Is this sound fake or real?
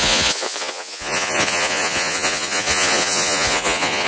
fake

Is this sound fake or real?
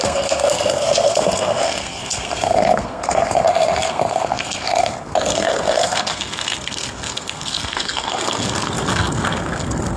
fake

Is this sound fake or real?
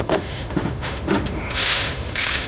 fake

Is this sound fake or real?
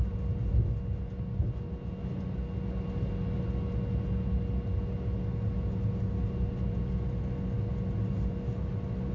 real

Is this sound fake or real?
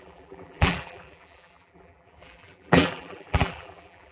fake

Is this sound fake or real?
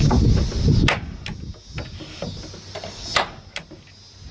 real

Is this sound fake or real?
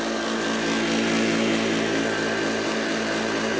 real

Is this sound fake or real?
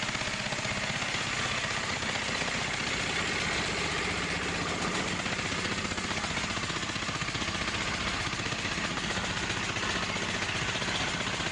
real